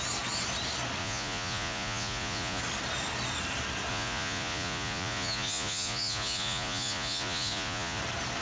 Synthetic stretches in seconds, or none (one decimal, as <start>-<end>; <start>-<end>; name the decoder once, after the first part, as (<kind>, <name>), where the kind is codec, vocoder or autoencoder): 1.0-2.6 (vocoder, Vocos); 3.9-8.0